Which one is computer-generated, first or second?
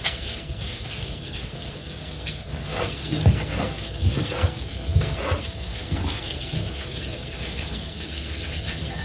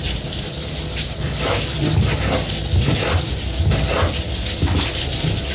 first